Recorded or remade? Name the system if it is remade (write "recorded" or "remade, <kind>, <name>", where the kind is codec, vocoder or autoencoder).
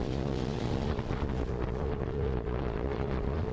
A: remade, vocoder, Vocos